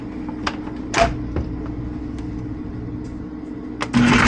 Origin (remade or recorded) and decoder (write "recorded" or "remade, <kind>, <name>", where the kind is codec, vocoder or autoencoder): recorded